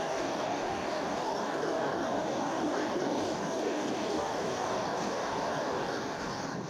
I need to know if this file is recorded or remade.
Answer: remade